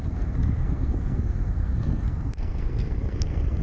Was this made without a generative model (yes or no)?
no